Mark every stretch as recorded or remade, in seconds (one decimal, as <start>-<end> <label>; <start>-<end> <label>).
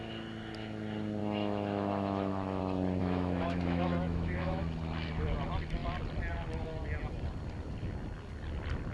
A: 0.0-1.2 recorded; 1.2-2.6 remade; 2.6-3.0 recorded; 3.0-4.6 remade; 4.6-8.9 recorded